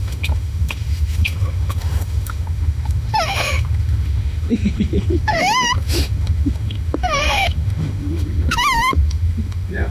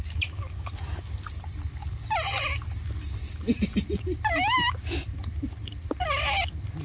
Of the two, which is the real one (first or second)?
second